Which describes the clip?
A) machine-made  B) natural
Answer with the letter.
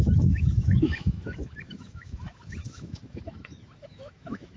A